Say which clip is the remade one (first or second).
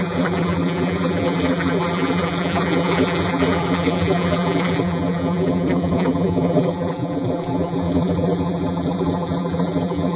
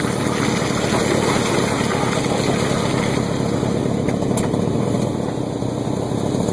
first